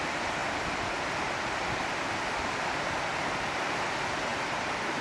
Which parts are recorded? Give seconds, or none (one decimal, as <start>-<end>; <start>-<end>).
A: 0.0-4.3